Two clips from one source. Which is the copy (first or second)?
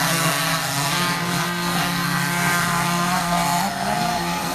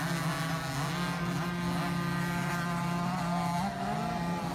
first